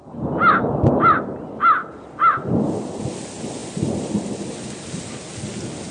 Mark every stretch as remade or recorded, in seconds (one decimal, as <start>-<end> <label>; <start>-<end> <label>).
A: 0.0-1.8 recorded; 1.8-3.0 remade; 3.0-3.6 recorded; 3.6-5.2 remade; 5.2-5.9 recorded